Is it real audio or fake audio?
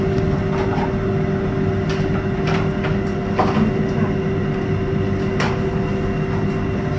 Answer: real